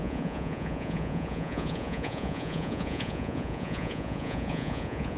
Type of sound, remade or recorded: remade